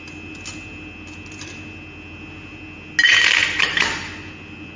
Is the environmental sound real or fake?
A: real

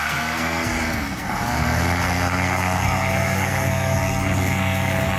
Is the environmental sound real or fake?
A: fake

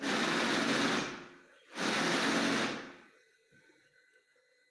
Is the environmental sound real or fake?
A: real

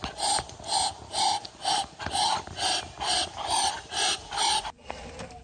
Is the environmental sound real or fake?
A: real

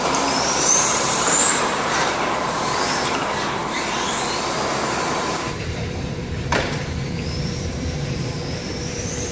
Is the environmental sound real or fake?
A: fake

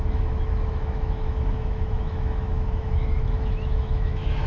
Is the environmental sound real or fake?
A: fake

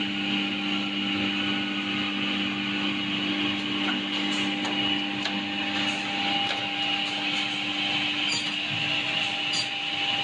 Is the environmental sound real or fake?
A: real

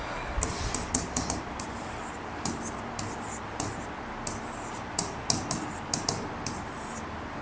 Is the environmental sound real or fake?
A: real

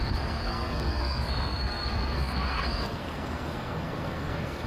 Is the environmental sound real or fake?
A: fake